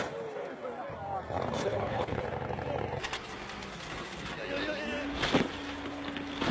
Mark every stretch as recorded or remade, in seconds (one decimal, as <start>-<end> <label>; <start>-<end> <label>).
0.0-1.6 recorded; 1.6-2.2 remade; 2.2-6.5 recorded